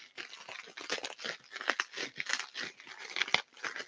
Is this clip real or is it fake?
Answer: real